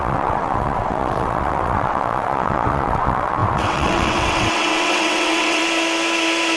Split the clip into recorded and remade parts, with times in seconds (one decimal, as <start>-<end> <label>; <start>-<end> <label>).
0.0-5.6 remade; 5.6-6.6 recorded